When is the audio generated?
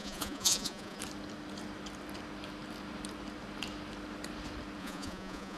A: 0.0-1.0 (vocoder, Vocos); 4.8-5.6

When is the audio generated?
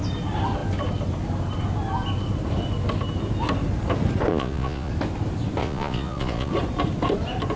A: 4.3-4.9 (vocoder, Vocos); 5.6-6.5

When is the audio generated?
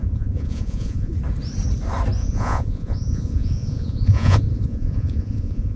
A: 0.0-1.1 (vocoder, Vocos); 2.2-5.8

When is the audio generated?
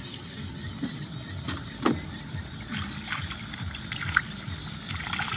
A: none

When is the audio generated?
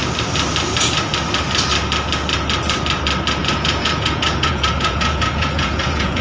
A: 3.4-6.2 (vocoder, Vocos)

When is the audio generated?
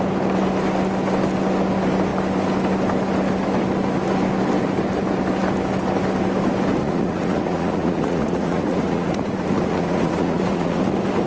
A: 6.8-10.8 (vocoder, Vocos)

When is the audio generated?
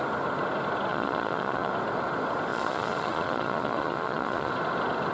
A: 0.9-1.7 (vocoder, Vocos); 2.5-4.5